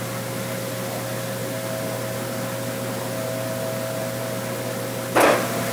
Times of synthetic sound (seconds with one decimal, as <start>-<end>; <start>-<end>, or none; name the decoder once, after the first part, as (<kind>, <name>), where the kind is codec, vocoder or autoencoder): none